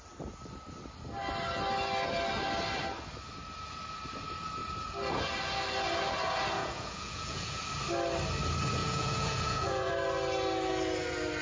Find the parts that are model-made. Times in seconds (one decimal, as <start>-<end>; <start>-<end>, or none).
6.6-7.6; 8.8-9.9